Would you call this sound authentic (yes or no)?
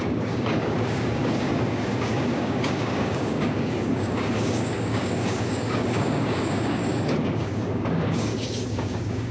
no